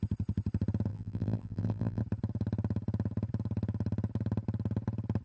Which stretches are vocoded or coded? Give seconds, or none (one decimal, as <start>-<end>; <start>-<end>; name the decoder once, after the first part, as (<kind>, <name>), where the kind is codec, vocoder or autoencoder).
0.9-2.0 (vocoder, BigVGAN v2)